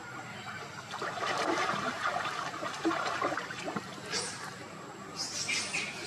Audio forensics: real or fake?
fake